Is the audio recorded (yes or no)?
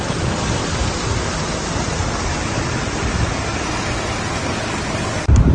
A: yes